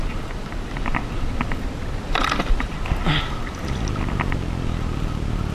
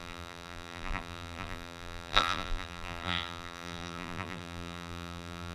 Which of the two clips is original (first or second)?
first